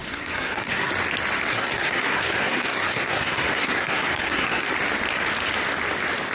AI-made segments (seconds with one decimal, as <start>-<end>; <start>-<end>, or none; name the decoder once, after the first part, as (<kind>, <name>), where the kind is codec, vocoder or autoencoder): 0.0-0.9 (codec, SNAC); 1.5-4.7